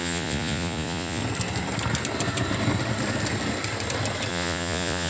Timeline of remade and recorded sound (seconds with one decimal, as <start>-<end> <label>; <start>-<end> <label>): 0.0-1.2 remade; 1.2-4.3 recorded; 4.3-5.1 remade